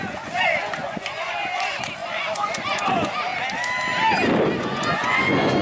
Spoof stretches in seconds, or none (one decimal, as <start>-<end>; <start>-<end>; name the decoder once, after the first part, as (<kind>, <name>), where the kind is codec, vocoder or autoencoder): 0.0-3.3 (vocoder, Vocos); 4.6-5.6